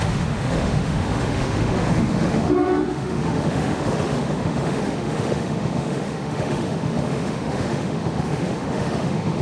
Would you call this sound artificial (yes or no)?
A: yes